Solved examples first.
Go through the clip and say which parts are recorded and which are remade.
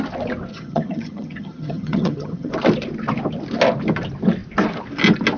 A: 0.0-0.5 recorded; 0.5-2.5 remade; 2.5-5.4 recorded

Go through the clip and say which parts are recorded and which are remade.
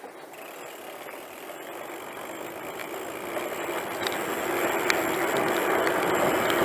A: 0.0-6.6 recorded